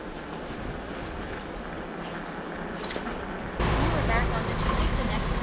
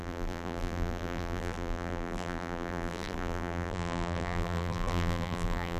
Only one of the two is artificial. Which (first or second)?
second